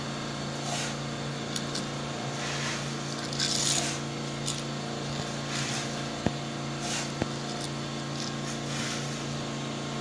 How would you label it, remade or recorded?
recorded